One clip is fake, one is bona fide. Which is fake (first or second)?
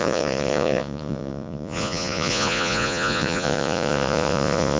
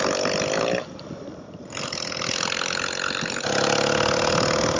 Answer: first